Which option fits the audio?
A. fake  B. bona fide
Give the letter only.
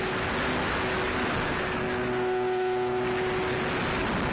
B